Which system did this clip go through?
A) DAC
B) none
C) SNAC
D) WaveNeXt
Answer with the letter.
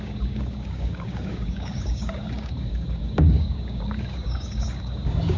A